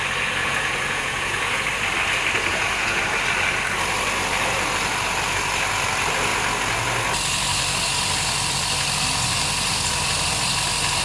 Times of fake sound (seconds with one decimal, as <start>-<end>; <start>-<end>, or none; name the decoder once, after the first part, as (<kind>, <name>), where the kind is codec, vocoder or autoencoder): 0.4-1.7 (vocoder, Vocos); 2.5-3.0